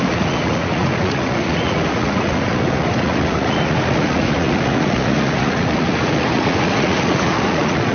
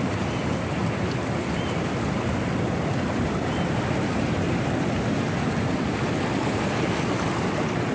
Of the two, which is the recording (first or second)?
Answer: second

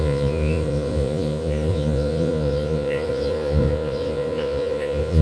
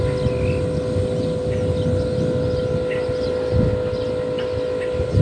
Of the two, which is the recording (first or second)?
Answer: second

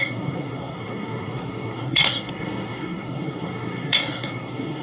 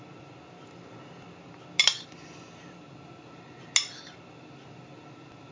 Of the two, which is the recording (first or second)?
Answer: second